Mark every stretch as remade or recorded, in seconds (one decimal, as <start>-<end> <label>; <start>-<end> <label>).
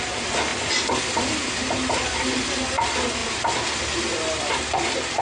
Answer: 0.0-0.5 recorded; 0.5-1.5 remade; 1.5-3.2 recorded; 3.2-4.5 remade; 4.5-5.2 recorded